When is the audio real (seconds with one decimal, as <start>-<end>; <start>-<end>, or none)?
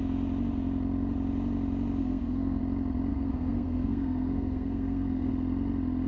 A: 0.0-2.0; 2.6-3.1; 5.3-6.1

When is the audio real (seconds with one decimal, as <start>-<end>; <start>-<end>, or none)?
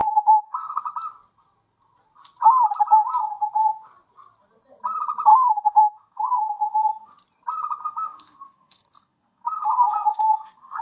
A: 0.8-5.3; 7.1-7.8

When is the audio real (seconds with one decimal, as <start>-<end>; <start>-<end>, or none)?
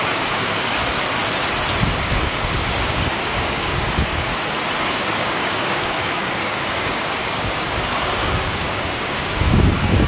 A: 0.8-2.0; 4.3-4.9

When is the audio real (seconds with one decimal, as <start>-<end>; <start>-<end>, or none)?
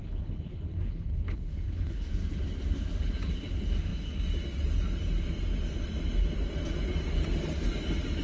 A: 2.1-8.2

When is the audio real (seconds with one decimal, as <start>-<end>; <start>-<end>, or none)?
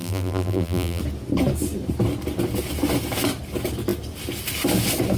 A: 1.0-5.2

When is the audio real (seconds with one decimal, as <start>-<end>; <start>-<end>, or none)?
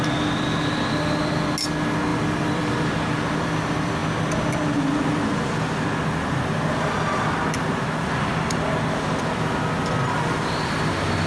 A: 0.0-2.1; 2.9-11.3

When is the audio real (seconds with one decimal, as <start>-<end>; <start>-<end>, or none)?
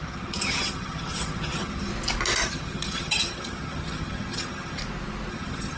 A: 1.9-2.5; 4.8-5.3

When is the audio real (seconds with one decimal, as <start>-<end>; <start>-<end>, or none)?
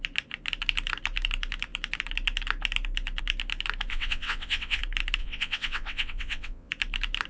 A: 0.0-3.9; 4.8-5.2; 6.7-7.3